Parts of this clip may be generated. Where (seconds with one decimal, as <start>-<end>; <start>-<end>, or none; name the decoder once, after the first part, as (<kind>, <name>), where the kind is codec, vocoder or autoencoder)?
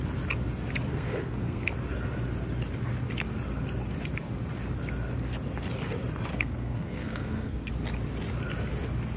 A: 0.9-1.7 (codec, SNAC); 6.3-7.7